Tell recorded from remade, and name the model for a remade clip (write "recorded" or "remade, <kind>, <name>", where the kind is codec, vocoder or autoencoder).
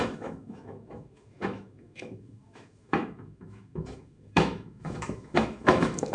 remade, autoencoder, DAC-VAE